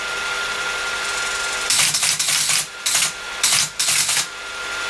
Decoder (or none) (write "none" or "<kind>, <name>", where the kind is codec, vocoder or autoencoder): none